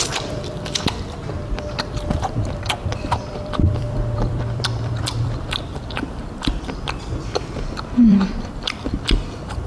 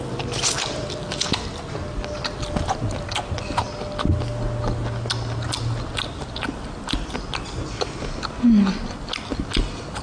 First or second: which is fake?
first